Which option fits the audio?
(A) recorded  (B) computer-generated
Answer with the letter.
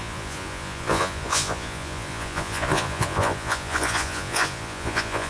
B